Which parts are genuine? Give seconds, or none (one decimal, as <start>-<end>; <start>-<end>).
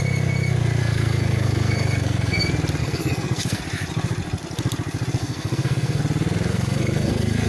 0.0-0.8; 2.4-2.8; 3.6-5.2; 6.0-6.5